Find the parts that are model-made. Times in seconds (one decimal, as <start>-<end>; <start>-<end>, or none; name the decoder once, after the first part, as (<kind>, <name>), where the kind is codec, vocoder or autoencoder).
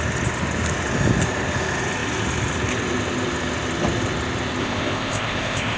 4.6-5.8 (codec, ZipCodec)